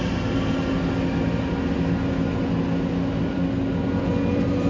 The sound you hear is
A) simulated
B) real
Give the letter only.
B